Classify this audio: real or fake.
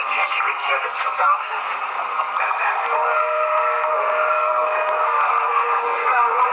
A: fake